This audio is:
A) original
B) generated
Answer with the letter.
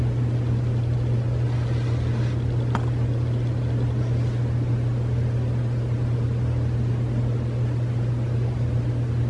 A